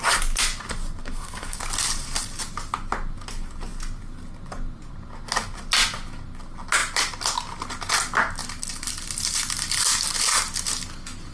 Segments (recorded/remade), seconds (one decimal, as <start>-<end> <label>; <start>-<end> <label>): 0.0-1.0 recorded; 1.0-1.6 remade; 1.6-11.3 recorded